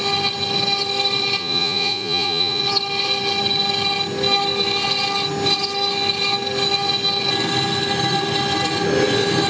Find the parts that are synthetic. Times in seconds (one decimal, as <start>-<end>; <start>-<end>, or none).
1.4-2.6